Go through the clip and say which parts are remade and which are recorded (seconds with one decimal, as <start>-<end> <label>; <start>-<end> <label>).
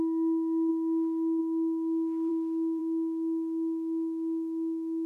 0.0-5.1 recorded